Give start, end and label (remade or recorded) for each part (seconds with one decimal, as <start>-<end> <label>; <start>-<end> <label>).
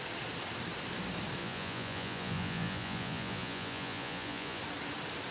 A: 0.0-1.4 recorded; 1.4-4.6 remade; 4.6-5.3 recorded